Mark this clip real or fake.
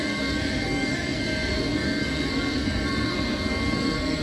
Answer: fake